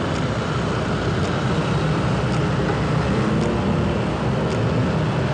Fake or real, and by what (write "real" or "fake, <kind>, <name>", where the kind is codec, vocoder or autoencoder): real